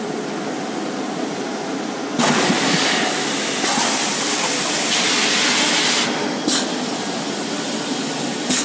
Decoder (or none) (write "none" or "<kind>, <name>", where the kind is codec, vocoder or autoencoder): none